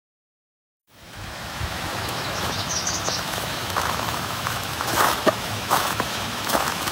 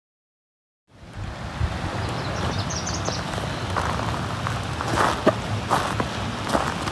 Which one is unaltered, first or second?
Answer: second